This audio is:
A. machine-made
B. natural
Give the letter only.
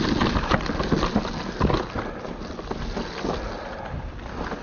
B